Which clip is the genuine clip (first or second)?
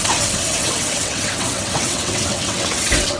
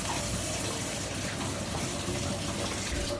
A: second